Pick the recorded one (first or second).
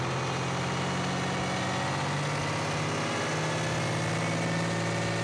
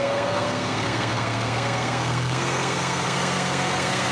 first